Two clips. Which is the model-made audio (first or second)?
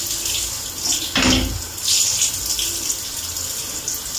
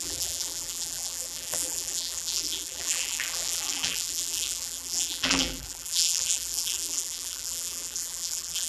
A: second